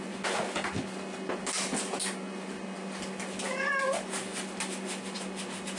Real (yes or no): yes